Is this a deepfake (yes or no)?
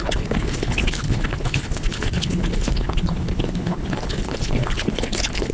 yes